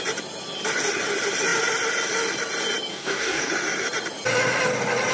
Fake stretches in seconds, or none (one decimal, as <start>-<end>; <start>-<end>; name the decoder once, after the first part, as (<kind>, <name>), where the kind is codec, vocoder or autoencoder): 2.9-3.5 (codec, DAC)